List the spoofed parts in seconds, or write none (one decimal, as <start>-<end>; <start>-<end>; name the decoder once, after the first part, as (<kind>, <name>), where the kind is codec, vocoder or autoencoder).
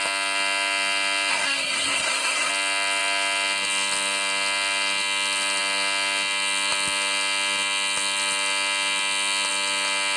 1.3-2.5 (codec, SNAC)